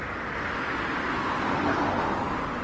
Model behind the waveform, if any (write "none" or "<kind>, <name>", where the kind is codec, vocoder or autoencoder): none